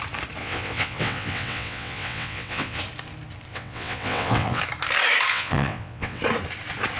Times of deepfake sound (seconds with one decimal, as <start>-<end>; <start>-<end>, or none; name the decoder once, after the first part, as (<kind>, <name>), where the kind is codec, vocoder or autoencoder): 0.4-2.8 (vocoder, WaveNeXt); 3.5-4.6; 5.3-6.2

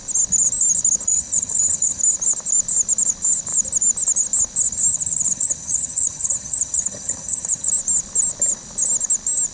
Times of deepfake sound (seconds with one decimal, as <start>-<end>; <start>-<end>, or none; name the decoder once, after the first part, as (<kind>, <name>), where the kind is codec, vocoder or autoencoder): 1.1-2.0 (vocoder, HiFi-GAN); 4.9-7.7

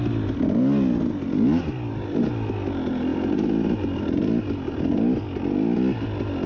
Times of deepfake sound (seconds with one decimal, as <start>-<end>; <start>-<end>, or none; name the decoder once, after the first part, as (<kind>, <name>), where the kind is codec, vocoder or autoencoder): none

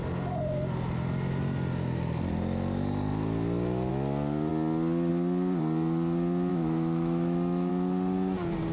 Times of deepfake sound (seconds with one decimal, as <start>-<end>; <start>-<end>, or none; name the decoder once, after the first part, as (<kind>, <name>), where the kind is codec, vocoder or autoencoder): 6.5-7.7 (autoencoder, DAC-VAE)

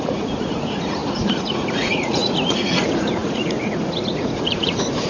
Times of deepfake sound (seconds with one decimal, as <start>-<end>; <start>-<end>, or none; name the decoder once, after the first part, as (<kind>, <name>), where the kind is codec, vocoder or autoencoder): 0.0-5.1 (vocoder, Vocos)

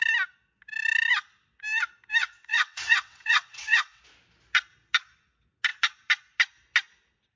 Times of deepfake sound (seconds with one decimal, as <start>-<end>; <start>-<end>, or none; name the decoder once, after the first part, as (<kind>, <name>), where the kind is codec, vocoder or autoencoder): 2.2-4.0 (vocoder, WaveNeXt)